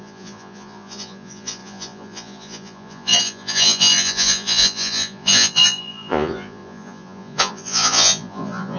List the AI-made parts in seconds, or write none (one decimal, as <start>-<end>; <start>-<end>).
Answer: 0.0-8.8